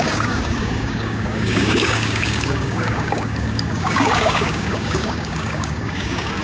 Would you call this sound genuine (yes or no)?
no